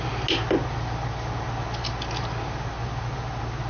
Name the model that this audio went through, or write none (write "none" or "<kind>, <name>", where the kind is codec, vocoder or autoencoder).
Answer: none